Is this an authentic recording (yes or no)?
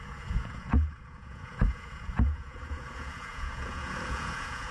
no